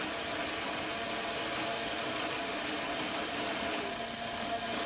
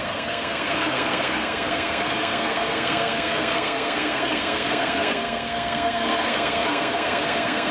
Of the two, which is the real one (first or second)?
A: first